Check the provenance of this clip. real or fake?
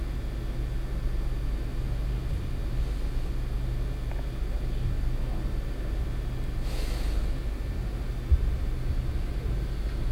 real